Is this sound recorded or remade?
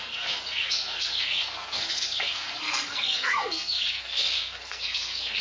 remade